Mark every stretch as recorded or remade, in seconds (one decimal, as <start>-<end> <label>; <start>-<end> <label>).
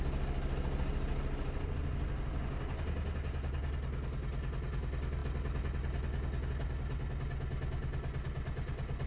0.0-9.1 recorded